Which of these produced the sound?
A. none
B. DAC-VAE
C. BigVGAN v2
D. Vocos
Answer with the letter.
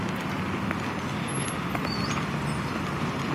A